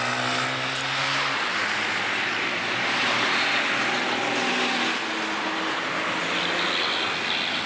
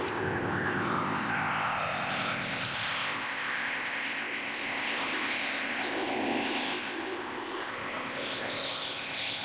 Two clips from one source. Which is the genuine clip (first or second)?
first